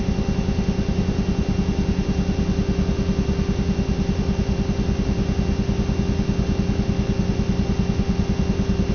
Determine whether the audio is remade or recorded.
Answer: recorded